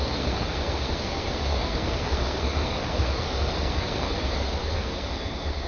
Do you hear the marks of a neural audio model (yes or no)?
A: yes